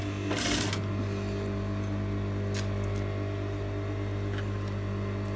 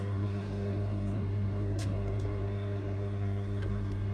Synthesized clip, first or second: second